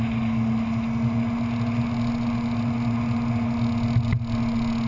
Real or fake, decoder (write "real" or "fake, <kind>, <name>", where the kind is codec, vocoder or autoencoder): real